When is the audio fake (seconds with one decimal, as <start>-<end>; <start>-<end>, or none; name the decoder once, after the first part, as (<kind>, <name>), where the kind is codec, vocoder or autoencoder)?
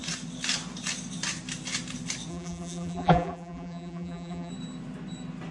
2.3-4.5 (vocoder, BigVGAN v2)